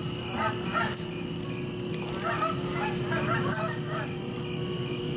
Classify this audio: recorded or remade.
recorded